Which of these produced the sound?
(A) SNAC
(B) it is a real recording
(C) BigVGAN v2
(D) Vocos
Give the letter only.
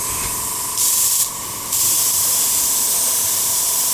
C